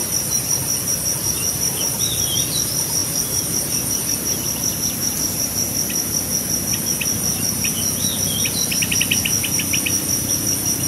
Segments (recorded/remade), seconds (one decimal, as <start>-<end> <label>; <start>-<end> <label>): 0.0-2.0 remade; 2.0-9.4 recorded; 9.4-10.3 remade; 10.3-10.9 recorded